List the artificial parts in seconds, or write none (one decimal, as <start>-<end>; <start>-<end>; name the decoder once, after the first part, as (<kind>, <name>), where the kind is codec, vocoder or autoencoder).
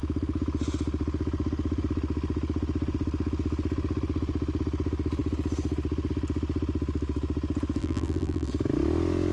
7.8-8.5 (vocoder, BigVGAN v2)